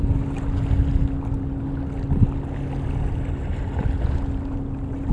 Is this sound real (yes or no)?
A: yes